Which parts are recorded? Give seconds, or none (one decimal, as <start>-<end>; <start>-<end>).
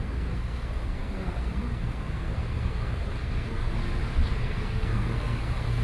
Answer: 3.8-4.4